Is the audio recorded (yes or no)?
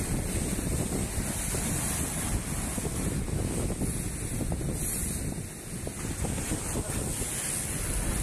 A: yes